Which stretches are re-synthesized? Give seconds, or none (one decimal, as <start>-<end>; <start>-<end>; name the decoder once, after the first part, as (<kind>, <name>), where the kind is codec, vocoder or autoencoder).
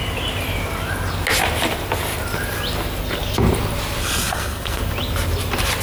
4.0-4.8 (codec, SNAC)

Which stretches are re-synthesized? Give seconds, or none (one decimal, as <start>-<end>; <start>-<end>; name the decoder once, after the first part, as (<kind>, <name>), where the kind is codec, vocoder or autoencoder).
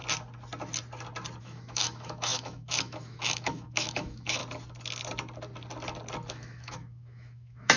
1.4-4.4 (autoencoder, DAC-VAE); 6.3-7.8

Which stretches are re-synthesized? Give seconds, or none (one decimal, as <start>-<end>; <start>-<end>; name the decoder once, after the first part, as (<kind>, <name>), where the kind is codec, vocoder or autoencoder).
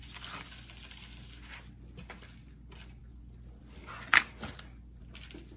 none